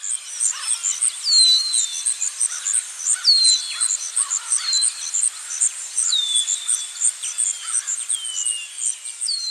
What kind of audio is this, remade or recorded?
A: recorded